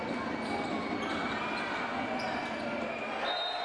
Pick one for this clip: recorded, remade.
recorded